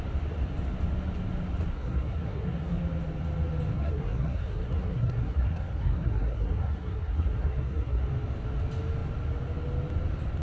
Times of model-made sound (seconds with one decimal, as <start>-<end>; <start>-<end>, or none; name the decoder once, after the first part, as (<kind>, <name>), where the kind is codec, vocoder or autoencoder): 1.7-2.8 (codec, SNAC); 3.7-8.0